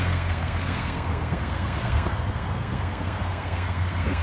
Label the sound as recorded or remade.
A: remade